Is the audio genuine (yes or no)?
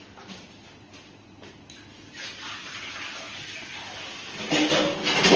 yes